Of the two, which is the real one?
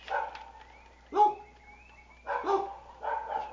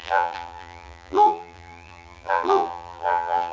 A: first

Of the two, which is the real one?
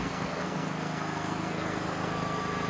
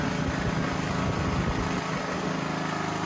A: second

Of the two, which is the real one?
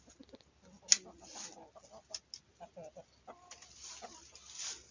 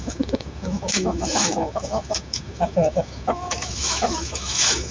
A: first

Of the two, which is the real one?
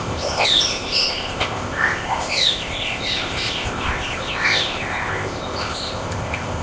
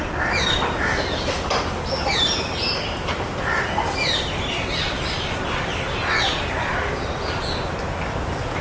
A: second